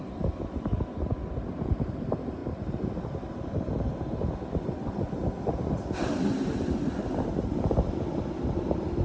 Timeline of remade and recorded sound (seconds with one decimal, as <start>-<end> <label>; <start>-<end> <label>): 0.0-9.0 recorded